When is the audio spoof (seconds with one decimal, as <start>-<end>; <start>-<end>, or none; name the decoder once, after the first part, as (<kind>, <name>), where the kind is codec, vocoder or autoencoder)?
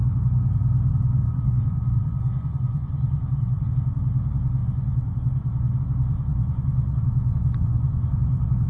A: 1.2-3.7 (vocoder, Vocos); 4.6-5.8; 6.3-8.7